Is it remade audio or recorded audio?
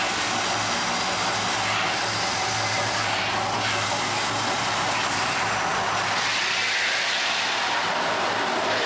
recorded